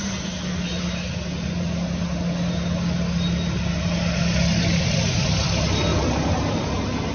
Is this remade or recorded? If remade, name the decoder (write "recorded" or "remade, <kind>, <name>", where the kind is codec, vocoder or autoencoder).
recorded